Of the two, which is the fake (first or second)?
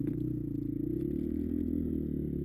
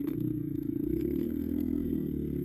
second